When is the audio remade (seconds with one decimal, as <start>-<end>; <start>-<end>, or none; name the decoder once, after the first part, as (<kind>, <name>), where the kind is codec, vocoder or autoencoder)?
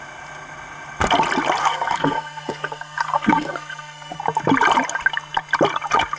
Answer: 1.6-4.2 (codec, SNAC)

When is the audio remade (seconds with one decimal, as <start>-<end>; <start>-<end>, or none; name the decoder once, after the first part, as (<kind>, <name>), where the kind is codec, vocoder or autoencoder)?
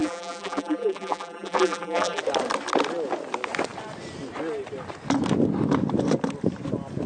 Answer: 0.0-2.2 (vocoder, BigVGAN v2)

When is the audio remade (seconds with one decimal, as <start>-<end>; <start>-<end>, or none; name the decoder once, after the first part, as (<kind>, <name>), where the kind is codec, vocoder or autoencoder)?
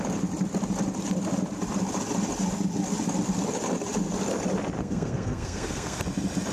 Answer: 4.8-6.0 (codec, SNAC)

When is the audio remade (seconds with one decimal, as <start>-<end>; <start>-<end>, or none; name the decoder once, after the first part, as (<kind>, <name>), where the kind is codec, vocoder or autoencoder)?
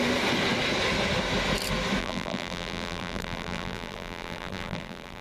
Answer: 2.0-5.2 (vocoder, BigVGAN v2)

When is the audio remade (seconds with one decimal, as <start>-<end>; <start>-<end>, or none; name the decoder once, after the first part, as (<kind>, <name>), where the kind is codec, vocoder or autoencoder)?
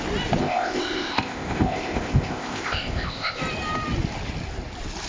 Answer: 0.4-3.4 (codec, ZipCodec)